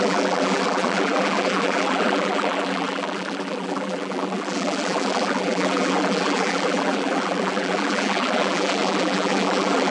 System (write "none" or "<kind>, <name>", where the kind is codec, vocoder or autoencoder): vocoder, BigVGAN v2